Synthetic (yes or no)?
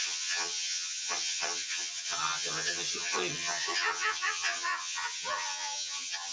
yes